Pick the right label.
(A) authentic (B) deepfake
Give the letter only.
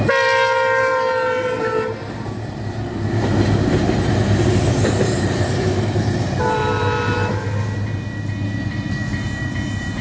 B